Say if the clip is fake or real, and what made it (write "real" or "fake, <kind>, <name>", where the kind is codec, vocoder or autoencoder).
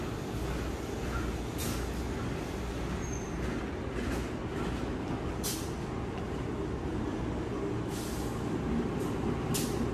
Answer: real